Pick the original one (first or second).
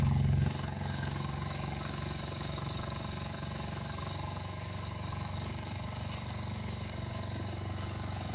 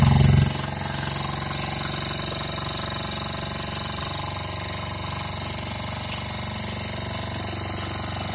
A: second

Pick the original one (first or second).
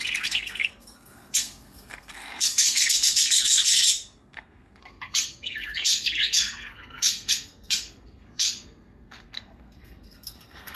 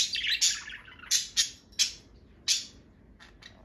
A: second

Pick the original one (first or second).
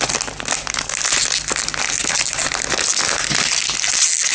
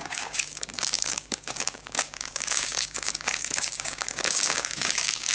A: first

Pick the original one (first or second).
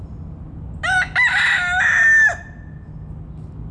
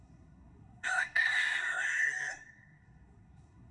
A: first